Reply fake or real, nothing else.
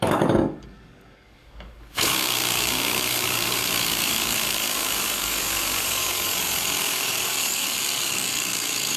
fake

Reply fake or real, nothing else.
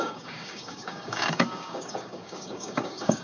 fake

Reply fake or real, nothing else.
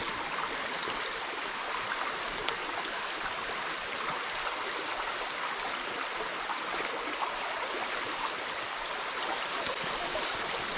real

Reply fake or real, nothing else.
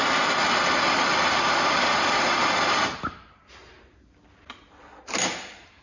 real